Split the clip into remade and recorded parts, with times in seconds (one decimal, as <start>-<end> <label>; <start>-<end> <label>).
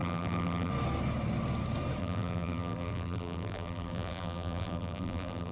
0.0-0.7 remade; 0.7-2.0 recorded; 2.0-5.5 remade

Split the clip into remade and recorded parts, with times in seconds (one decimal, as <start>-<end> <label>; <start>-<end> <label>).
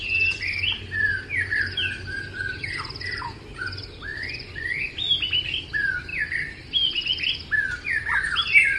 0.0-4.1 recorded; 4.1-4.9 remade; 4.9-8.8 recorded